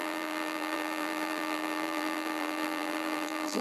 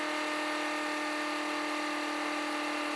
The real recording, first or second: second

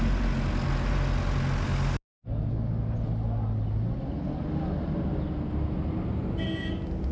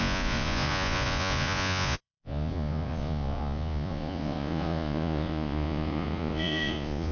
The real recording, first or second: first